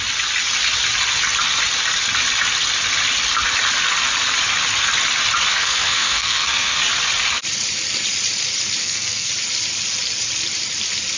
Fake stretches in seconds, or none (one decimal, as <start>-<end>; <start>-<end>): 5.5-6.8; 8.8-9.3

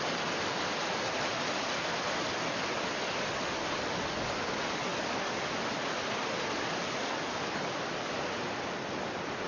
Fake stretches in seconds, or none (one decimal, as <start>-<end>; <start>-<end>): none

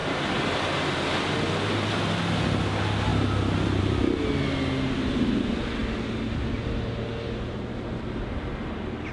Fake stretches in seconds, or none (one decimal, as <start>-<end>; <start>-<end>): none